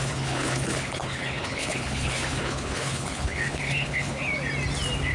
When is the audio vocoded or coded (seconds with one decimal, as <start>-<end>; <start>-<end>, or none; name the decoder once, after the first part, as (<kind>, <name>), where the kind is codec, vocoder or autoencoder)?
0.0-4.2 (codec, HILCodec)